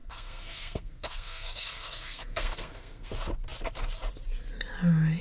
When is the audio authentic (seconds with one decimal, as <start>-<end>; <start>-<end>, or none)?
3.1-5.2